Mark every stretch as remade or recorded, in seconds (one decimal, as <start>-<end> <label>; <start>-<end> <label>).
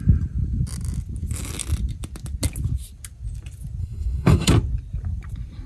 0.0-3.8 recorded; 3.8-4.5 remade; 4.5-5.7 recorded